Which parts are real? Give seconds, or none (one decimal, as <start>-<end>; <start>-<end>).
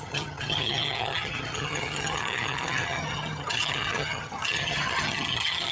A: none